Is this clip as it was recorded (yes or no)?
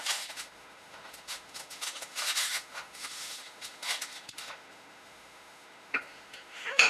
no